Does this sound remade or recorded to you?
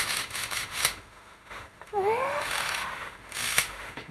remade